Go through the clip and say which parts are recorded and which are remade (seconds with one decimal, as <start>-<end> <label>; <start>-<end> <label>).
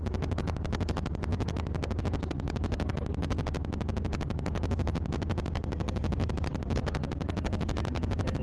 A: 0.0-8.4 recorded